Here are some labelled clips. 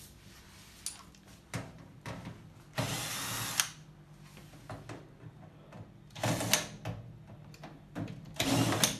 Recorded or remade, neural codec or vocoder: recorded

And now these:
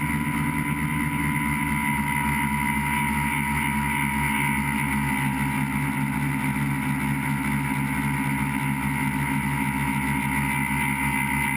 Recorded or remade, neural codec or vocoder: recorded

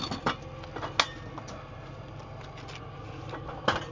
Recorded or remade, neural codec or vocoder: recorded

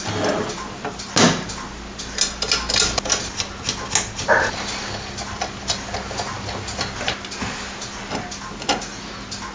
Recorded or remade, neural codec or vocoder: recorded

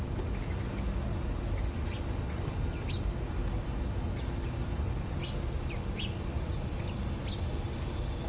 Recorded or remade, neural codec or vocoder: recorded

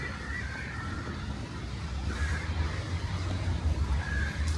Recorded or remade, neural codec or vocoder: remade, vocoder, BigVGAN v2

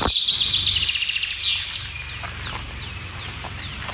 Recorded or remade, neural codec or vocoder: recorded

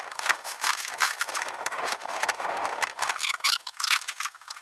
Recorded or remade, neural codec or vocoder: remade, autoencoder, DAC-VAE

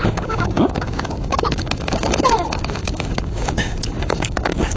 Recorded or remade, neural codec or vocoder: remade, codec, DAC